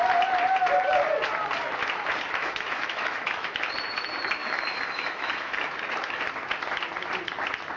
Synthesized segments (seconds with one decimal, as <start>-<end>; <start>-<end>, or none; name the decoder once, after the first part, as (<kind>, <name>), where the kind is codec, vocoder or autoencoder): 2.4-3.7 (autoencoder, DAC-VAE); 4.4-6.2